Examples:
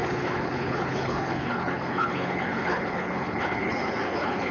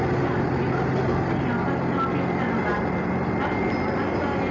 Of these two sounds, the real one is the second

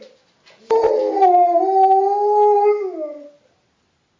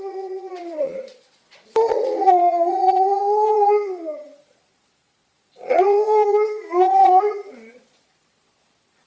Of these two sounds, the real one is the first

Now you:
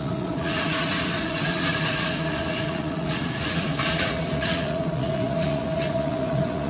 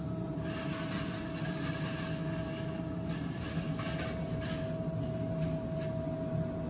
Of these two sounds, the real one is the second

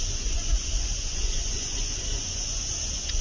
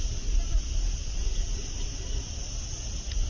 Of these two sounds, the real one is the second